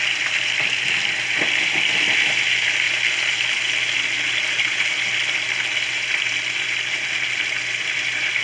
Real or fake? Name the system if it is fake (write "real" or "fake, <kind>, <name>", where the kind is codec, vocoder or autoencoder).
real